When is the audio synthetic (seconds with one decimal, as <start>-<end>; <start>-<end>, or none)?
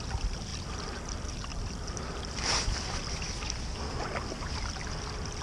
none